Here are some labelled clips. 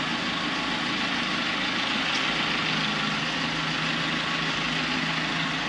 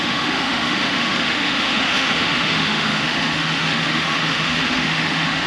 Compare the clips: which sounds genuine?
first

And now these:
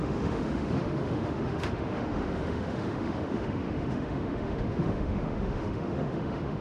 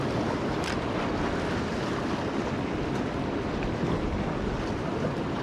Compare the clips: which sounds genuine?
second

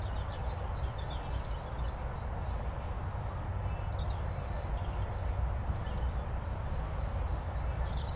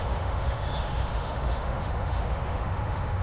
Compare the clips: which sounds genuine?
first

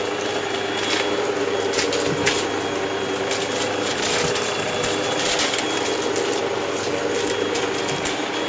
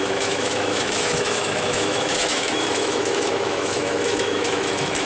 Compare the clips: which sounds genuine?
first